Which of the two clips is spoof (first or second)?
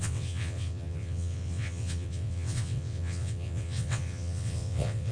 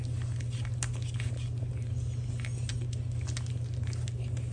first